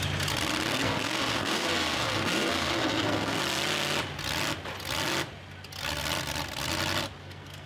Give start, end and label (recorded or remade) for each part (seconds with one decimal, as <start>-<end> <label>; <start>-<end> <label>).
0.0-0.7 recorded; 0.7-3.4 remade; 3.4-7.2 recorded; 7.2-7.7 remade